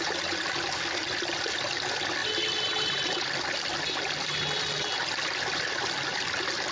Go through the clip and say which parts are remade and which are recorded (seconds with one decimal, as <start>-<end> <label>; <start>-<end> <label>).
0.0-6.7 recorded